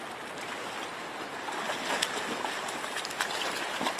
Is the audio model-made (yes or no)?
no